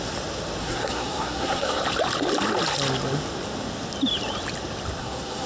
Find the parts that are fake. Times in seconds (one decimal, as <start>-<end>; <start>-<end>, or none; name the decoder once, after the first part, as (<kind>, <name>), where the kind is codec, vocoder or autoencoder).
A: 0.6-1.8 (codec, SNAC); 5.0-5.5